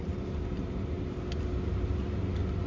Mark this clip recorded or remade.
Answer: recorded